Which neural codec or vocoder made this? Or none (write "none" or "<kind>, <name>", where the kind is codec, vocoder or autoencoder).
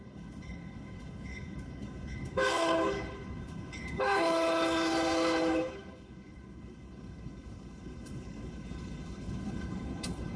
codec, HILCodec